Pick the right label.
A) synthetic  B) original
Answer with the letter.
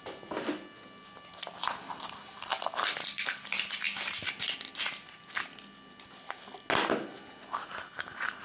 B